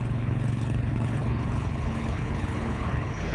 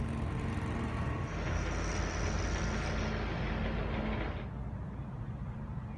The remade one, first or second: first